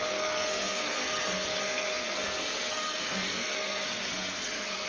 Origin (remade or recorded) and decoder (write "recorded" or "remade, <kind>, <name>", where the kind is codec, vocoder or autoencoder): remade, codec, SNAC